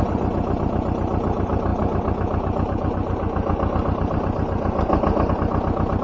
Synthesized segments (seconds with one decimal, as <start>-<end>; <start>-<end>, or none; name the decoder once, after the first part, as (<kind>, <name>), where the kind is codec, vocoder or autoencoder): none